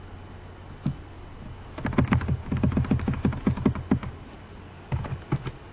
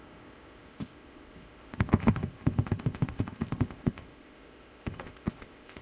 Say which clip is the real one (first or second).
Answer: first